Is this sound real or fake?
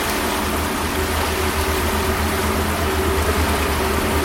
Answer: real